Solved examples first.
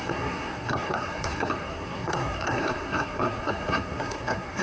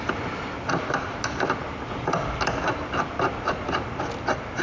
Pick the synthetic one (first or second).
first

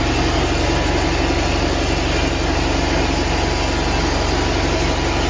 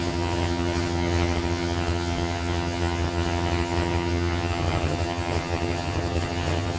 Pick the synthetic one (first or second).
second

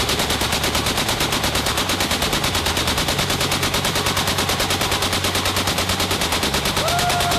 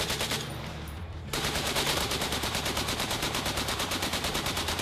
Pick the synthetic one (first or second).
second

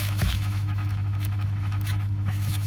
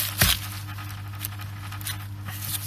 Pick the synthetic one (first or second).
first